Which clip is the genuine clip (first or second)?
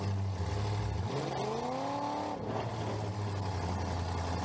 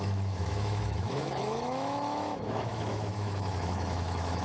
first